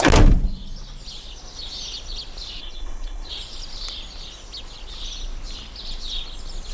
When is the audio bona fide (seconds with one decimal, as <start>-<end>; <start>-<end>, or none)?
0.0-2.6; 3.3-6.7